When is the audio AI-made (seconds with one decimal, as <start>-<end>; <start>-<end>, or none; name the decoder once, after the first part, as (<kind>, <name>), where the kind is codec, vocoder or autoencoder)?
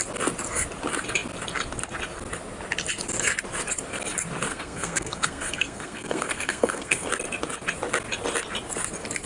4.5-7.1 (codec, SNAC)